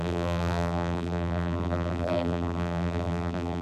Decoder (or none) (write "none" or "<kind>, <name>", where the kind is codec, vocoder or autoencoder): vocoder, BigVGAN v2